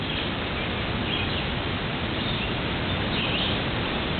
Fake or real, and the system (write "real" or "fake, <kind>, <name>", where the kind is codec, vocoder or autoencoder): real